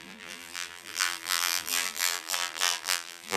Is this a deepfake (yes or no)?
yes